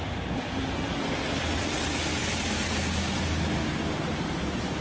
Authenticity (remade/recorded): recorded